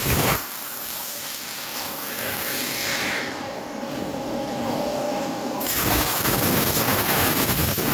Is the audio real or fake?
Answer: fake